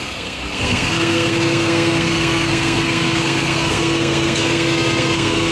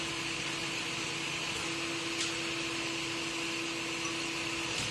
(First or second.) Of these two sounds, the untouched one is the second